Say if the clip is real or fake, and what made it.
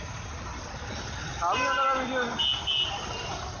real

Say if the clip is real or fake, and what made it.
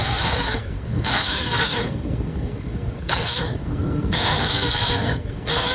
fake, codec, SNAC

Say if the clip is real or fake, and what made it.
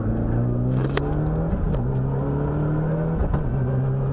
real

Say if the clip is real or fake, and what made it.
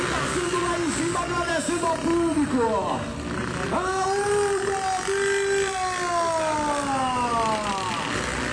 real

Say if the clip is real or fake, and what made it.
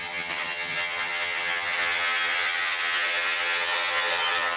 fake, vocoder, HiFi-GAN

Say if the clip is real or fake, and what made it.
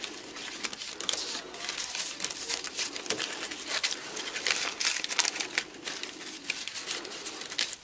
real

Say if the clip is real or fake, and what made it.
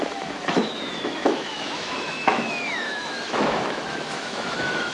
fake, autoencoder, DAC-VAE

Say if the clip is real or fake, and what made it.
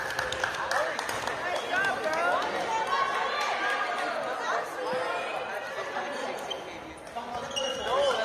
real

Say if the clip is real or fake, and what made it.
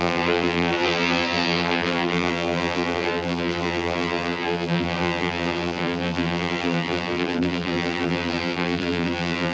fake, vocoder, BigVGAN v2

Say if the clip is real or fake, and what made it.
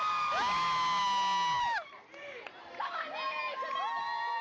real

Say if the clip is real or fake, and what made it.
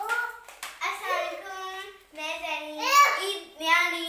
real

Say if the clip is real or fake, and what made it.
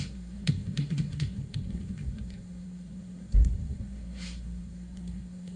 fake, codec, SNAC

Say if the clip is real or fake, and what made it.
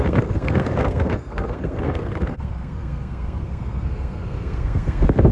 fake, codec, SNAC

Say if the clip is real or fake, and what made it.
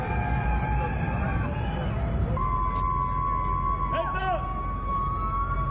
real